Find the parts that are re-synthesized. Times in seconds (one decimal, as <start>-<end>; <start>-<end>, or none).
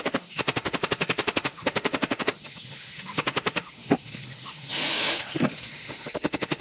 0.0-6.6